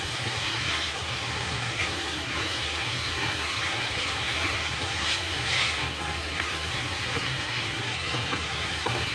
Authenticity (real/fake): fake